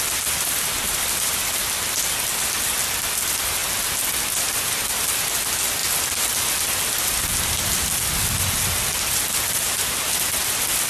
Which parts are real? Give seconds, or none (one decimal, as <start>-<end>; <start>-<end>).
0.0-10.9